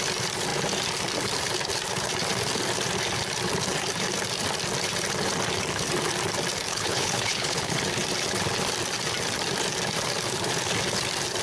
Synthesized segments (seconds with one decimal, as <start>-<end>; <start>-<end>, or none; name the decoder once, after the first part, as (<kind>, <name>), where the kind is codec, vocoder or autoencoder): 6.7-7.8 (codec, HILCodec)